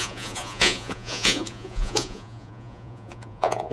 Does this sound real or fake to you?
fake